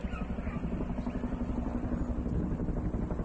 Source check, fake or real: real